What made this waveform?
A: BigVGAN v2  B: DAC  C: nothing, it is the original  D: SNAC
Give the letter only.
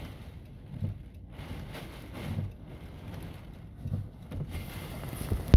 C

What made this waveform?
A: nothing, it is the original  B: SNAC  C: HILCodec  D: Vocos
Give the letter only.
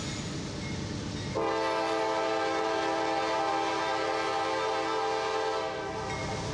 A